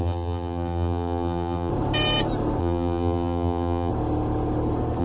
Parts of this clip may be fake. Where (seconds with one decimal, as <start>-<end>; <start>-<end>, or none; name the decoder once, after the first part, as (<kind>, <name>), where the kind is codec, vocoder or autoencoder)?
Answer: 0.0-1.7 (vocoder, BigVGAN v2); 2.6-3.9